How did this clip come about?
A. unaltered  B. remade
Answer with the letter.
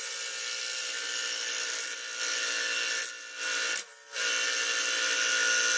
A